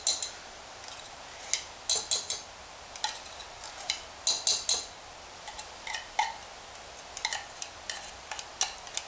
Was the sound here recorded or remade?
recorded